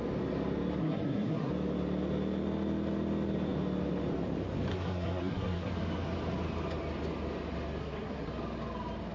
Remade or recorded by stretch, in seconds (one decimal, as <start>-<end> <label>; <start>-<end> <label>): 0.0-0.8 recorded; 0.8-1.5 remade; 1.5-4.7 recorded; 4.7-5.7 remade; 5.7-7.8 recorded; 7.8-8.3 remade; 8.3-9.1 recorded